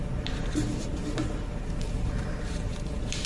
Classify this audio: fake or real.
fake